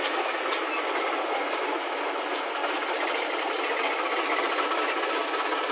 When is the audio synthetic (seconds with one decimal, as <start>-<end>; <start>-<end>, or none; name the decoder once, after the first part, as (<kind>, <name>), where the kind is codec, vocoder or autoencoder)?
none

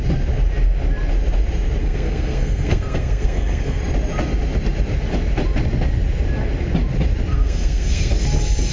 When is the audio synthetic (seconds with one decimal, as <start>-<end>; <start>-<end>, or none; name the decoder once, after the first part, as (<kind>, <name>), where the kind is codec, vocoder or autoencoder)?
1.8-3.8 (codec, SNAC); 7.3-8.1